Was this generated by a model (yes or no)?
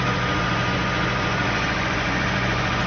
yes